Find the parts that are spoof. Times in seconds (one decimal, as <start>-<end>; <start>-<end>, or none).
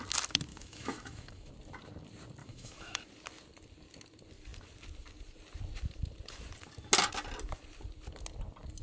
0.5-1.5; 2.4-3.0